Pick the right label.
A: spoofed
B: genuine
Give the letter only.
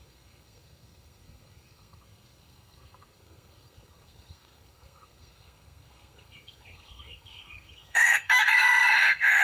A